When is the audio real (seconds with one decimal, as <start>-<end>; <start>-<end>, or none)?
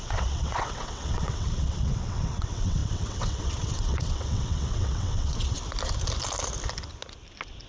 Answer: 5.6-7.7